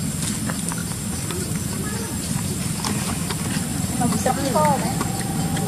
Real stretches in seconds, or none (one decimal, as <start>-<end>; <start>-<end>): 0.0-0.8; 3.2-3.7; 4.3-5.7